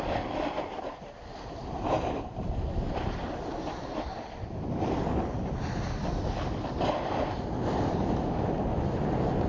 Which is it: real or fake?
real